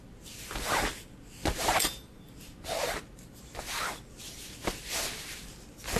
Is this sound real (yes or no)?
yes